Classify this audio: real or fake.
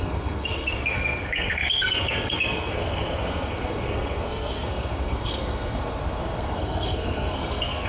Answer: fake